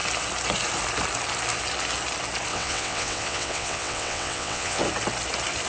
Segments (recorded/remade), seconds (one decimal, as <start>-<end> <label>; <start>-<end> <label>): 0.0-2.5 recorded; 2.5-4.8 remade; 4.8-5.7 recorded